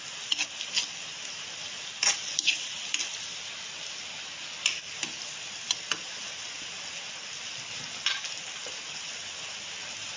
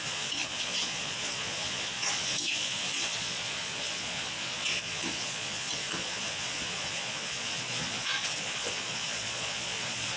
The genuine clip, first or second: first